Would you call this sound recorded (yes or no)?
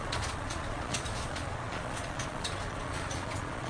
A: no